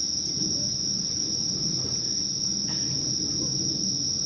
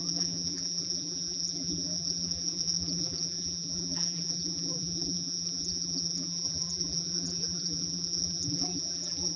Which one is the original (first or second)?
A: first